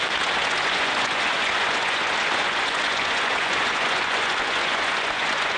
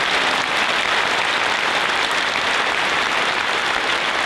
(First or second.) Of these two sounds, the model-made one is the first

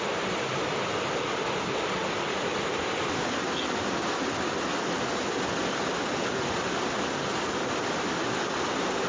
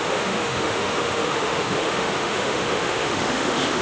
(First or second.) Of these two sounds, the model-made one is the second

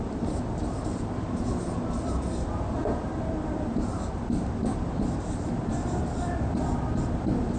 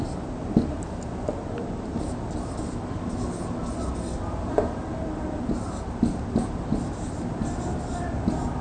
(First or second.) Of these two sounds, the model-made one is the first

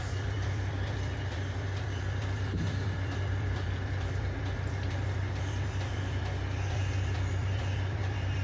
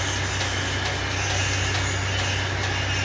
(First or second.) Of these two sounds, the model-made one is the first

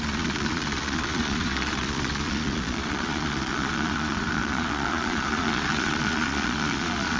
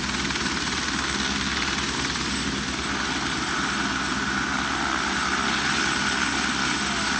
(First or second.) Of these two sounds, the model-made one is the first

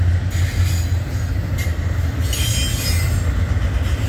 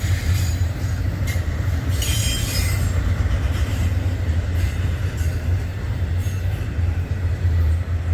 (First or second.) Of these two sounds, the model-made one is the second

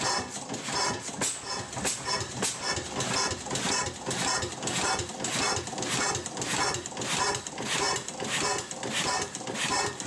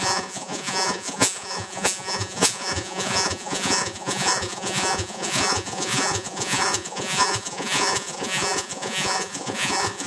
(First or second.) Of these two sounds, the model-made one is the second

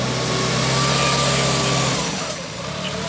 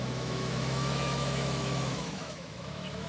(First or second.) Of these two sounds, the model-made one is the second